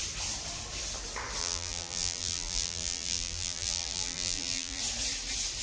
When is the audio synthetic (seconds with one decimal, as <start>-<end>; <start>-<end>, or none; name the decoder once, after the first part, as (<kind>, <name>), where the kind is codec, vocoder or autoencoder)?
1.4-4.8 (vocoder, BigVGAN v2)

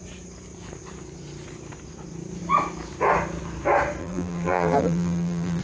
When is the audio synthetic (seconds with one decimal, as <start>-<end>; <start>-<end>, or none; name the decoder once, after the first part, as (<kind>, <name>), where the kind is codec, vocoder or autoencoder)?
4.0-5.6 (vocoder, BigVGAN v2)

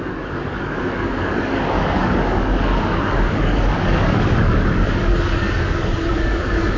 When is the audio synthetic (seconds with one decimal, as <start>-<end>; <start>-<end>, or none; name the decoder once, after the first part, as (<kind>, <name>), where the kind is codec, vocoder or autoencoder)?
0.0-6.8 (codec, DAC)

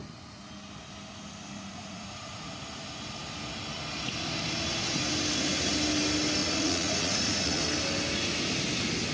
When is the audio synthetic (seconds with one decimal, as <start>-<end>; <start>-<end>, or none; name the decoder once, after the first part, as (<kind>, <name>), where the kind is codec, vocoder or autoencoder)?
1.6-2.5 (vocoder, Vocos); 6.4-7.6

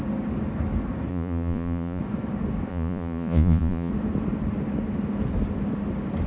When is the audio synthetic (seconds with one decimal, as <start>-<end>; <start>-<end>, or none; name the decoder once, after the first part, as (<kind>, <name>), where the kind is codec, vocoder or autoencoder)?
1.1-2.0 (vocoder, Vocos); 2.7-3.9

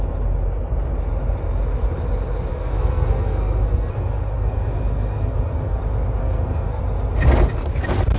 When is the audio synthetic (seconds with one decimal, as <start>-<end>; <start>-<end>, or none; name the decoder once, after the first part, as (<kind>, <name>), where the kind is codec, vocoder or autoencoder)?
2.5-5.8 (codec, SNAC); 6.2-6.8

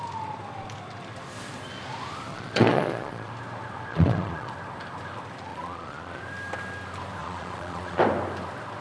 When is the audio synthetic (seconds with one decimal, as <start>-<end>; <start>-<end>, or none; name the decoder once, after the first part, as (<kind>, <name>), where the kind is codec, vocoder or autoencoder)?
2.3-3.3 (vocoder, Vocos); 3.9-4.5; 5.5-6.2; 7.2-8.0